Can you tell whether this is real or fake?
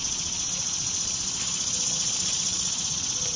fake